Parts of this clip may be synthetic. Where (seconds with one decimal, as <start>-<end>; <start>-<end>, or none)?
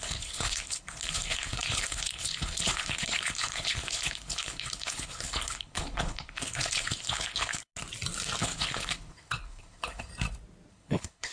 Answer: 0.0-7.7; 8.4-10.1; 10.7-11.3